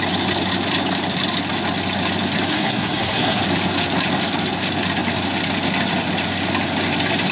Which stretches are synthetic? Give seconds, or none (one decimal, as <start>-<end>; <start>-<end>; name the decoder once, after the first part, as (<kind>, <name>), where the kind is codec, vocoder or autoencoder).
2.5-3.4 (codec, SNAC)